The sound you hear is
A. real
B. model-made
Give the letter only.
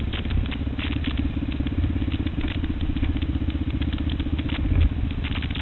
A